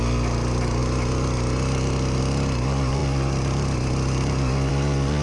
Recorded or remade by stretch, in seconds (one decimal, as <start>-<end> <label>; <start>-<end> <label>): 0.0-5.2 recorded

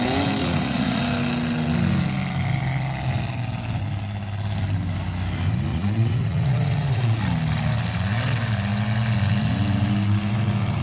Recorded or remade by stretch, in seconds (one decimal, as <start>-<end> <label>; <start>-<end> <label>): 0.0-0.4 recorded; 0.4-1.0 remade; 1.0-5.7 recorded; 5.7-7.2 remade; 7.2-10.8 recorded

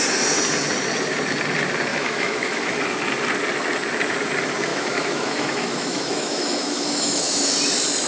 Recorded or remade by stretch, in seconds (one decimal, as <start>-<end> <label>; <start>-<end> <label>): 0.0-1.9 recorded; 1.9-2.8 remade; 2.8-4.7 recorded; 4.7-7.5 remade; 7.5-8.1 recorded

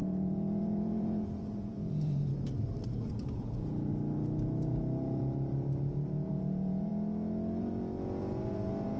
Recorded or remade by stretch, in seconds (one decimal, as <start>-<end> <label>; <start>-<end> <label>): 0.0-2.3 remade; 2.3-3.4 recorded; 3.4-3.9 remade; 3.9-6.3 recorded; 6.3-6.9 remade; 6.9-7.6 recorded; 7.6-9.0 remade

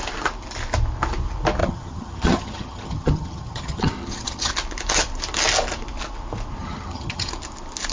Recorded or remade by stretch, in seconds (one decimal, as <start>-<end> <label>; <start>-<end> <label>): 0.0-1.6 recorded; 1.6-4.5 remade; 4.5-6.6 recorded; 6.6-7.3 remade; 7.3-7.9 recorded